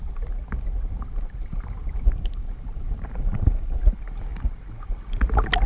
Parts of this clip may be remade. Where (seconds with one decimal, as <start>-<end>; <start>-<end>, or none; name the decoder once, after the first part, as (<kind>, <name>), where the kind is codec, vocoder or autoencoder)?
1.8-3.8 (vocoder, BigVGAN v2)